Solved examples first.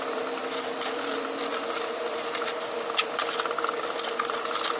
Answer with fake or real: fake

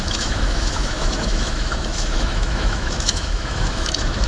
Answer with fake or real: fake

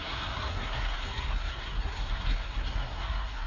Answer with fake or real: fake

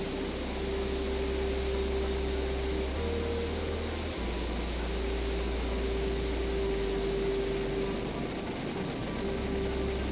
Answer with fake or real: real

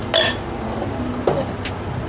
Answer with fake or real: real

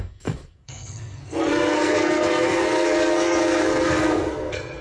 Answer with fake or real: fake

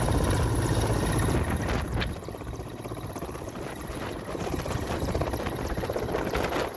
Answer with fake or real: real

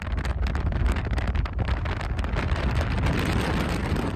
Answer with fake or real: real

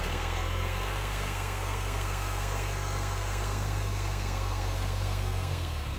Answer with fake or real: fake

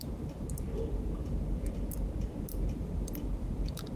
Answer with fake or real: real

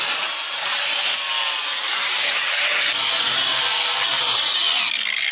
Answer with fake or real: real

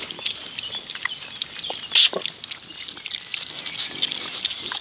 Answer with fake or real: real